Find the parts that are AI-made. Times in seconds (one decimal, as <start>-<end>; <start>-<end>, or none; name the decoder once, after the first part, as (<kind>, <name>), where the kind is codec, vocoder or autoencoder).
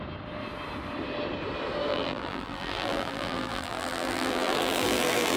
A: 1.9-5.4 (vocoder, BigVGAN v2)